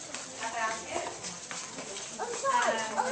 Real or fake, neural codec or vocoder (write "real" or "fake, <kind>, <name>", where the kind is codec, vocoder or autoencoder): real